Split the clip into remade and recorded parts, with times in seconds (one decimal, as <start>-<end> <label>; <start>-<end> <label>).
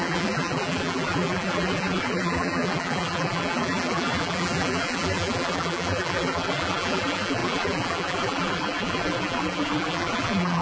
0.0-10.6 remade